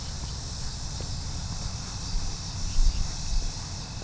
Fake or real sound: real